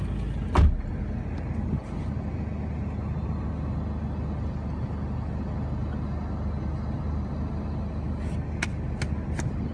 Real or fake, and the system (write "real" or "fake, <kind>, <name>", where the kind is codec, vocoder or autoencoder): real